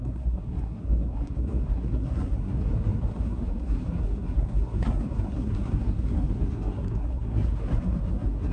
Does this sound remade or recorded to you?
remade